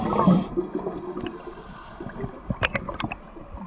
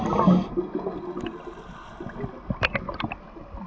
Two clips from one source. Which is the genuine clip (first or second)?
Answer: second